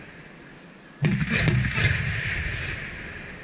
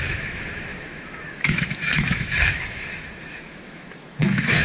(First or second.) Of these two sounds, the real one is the first